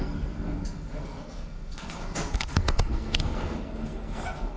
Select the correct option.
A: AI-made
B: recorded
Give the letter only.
A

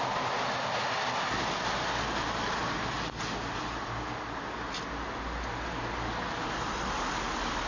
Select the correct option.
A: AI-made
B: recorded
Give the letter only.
B